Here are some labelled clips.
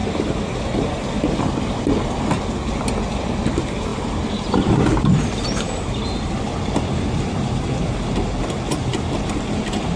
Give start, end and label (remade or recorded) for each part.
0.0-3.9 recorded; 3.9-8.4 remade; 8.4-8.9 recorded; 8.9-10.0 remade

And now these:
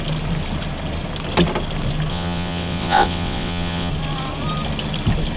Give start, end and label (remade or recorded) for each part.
0.0-2.1 recorded; 2.1-3.9 remade; 3.9-5.4 recorded

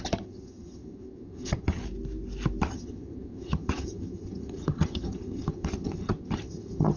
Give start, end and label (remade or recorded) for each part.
0.0-1.8 remade; 1.8-2.6 recorded; 2.6-7.0 remade

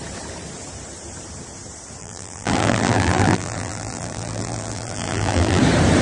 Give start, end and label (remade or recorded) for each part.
0.0-2.0 recorded; 2.0-5.6 remade; 5.6-6.0 recorded

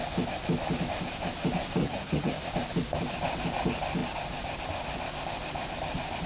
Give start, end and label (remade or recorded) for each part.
0.0-1.8 recorded; 1.8-2.4 remade; 2.4-6.3 recorded